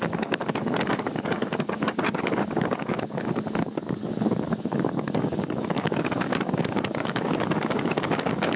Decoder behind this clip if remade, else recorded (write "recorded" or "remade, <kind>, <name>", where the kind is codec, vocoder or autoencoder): remade, codec, DAC